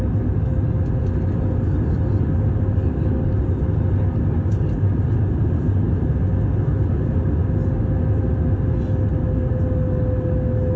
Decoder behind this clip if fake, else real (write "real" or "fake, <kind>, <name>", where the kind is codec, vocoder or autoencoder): real